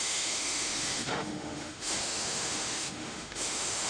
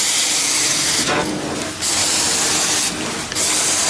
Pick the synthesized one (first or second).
first